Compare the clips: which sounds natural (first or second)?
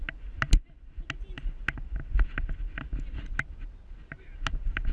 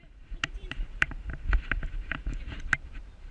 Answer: first